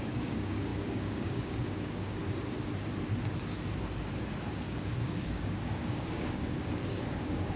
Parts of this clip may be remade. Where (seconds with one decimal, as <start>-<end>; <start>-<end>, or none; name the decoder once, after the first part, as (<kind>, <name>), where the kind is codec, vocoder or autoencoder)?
0.0-2.2 (codec, DAC); 4.5-7.6